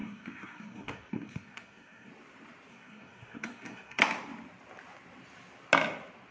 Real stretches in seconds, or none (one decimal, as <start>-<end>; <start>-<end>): 2.1-2.7; 4.0-6.3